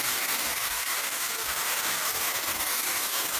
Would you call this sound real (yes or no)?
no